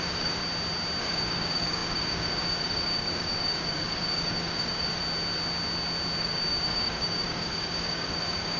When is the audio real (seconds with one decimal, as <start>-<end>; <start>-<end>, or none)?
0.4-1.0; 5.0-6.2